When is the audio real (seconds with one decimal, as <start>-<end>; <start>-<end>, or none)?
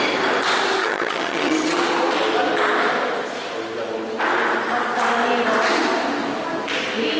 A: 0.0-0.8; 1.8-7.2